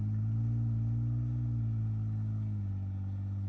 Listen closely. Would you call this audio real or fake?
real